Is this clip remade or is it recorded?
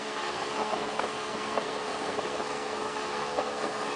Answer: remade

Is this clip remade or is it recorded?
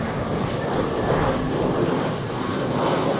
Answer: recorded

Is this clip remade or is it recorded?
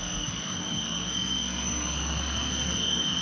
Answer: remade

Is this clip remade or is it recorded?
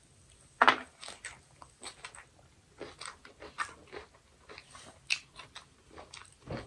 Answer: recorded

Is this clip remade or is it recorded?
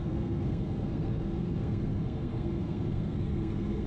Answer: remade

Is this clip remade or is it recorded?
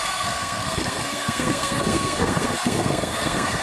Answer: remade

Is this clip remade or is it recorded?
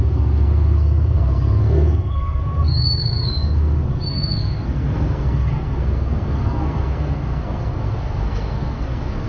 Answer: remade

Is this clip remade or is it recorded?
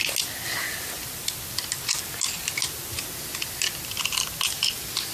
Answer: recorded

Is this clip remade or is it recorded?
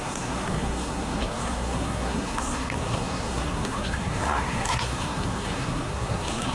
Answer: remade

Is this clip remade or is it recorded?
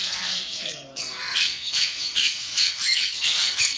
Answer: remade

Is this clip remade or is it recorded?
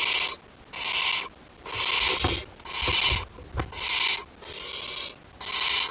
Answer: recorded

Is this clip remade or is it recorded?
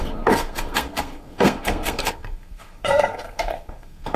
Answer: remade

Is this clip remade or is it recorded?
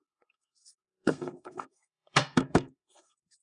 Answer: remade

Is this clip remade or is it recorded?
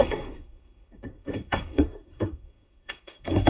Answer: remade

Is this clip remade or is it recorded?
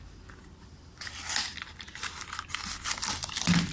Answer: recorded